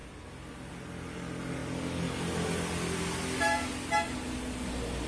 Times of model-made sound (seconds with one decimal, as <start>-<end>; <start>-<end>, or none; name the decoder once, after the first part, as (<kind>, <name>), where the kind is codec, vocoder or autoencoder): none